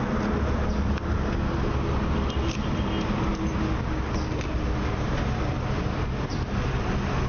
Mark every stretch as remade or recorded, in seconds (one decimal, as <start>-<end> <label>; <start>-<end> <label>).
0.0-7.3 recorded